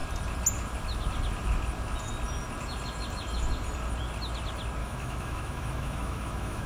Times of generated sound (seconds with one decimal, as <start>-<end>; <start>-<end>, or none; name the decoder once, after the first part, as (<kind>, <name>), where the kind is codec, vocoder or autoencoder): 4.8-6.7 (autoencoder, DAC-VAE)